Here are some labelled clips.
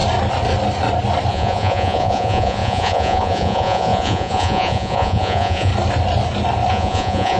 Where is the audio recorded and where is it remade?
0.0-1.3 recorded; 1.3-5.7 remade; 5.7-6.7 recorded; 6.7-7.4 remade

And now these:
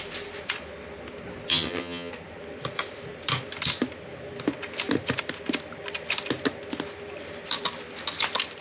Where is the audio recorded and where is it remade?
0.0-1.5 recorded; 1.5-2.1 remade; 2.1-8.6 recorded